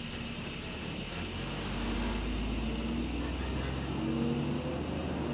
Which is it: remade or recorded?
recorded